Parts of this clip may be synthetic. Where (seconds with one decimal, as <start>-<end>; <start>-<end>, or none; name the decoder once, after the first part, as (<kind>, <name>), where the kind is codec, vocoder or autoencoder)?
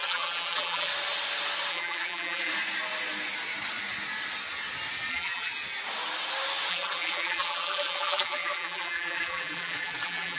0.0-0.9 (vocoder, BigVGAN v2); 1.7-2.5; 5.1-5.5; 6.7-10.4